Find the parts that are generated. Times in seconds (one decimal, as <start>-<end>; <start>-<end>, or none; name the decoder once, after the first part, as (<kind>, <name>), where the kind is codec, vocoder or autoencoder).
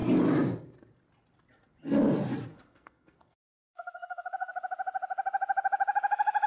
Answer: 2.5-4.5 (codec, SNAC)